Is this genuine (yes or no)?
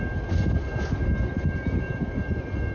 yes